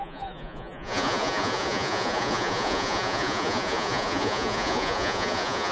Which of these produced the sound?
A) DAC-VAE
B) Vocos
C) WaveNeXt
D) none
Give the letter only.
B